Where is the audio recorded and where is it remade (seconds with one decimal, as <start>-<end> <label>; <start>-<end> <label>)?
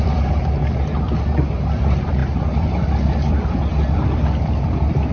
0.0-5.1 remade